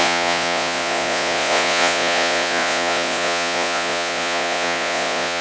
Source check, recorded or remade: remade